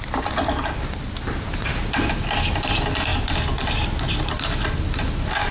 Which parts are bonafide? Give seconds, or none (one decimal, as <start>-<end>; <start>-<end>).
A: 0.0-5.5